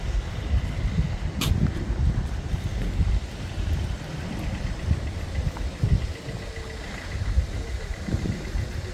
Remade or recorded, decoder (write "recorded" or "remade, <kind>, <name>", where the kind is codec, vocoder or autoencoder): recorded